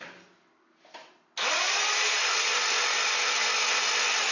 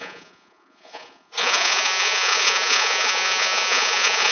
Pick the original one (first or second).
first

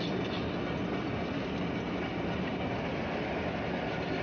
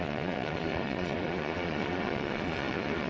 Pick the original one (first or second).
first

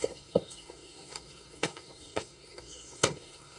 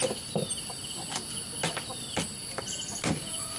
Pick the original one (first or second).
second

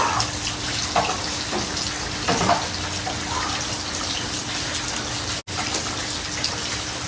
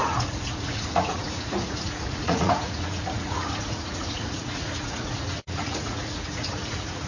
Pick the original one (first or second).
first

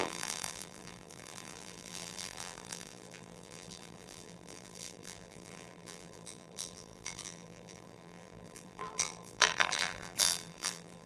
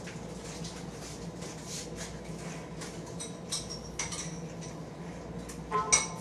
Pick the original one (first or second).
second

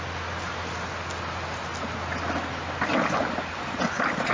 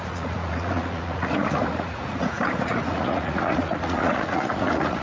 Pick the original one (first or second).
first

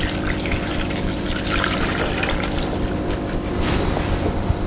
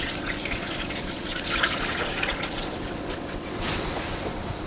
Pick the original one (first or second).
first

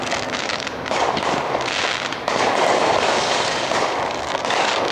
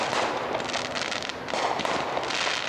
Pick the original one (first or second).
second